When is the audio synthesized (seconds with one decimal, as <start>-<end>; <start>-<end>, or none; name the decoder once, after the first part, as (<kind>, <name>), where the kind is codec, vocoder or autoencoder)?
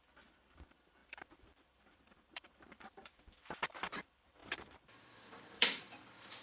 0.0-6.4 (vocoder, BigVGAN v2)